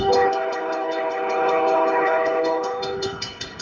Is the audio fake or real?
fake